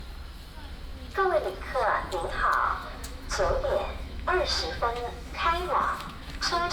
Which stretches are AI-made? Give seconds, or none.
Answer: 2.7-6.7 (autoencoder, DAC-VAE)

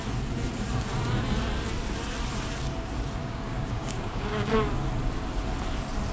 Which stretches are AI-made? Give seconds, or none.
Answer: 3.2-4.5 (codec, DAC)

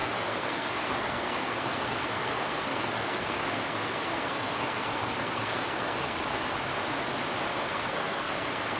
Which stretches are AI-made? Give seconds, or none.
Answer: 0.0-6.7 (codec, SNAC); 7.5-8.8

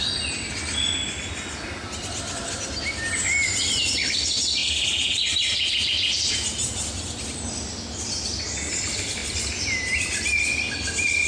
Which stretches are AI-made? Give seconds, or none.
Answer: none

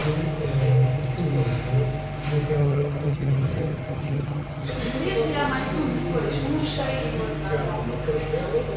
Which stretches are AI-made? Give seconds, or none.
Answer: 2.6-4.7 (vocoder, HiFi-GAN)

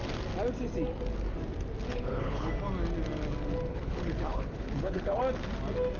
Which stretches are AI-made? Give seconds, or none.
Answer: 1.9-2.5 (codec, HILCodec); 3.7-5.2